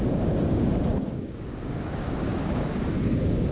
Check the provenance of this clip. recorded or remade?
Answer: remade